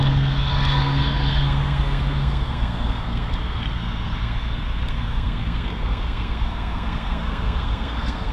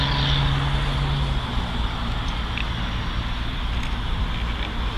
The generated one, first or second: first